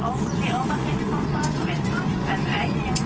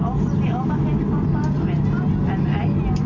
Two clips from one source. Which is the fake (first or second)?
first